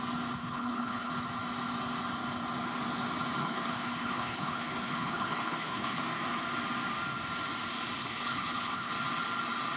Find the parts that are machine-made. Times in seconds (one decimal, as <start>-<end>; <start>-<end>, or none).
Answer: 0.4-1.1; 3.4-6.0; 8.0-8.9